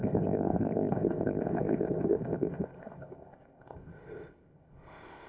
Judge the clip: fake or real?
fake